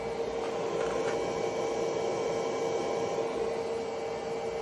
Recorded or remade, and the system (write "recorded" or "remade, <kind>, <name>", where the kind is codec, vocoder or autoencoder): recorded